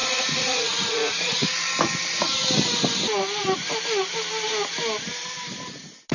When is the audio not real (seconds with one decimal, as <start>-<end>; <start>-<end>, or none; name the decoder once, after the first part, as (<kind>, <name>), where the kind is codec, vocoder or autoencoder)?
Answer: 0.0-1.7 (vocoder, Vocos)